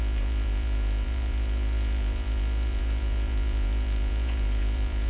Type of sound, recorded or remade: remade